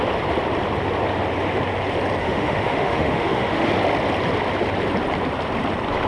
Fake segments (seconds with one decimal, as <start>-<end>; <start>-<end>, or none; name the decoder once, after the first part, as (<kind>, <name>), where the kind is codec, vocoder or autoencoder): 2.2-3.7 (autoencoder, DAC-VAE)

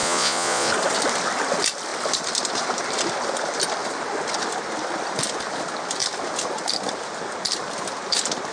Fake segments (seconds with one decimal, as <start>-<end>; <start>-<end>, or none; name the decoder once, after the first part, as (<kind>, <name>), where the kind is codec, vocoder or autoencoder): 0.0-0.7 (vocoder, Vocos)

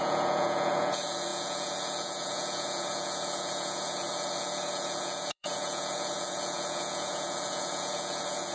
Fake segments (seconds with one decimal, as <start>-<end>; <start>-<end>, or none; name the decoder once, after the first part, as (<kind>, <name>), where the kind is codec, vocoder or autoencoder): 0.0-8.5 (vocoder, Vocos)

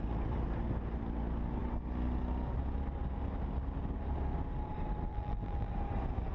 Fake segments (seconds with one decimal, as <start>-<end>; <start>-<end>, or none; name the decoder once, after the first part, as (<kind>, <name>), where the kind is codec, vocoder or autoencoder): 5.1-5.7 (vocoder, BigVGAN v2)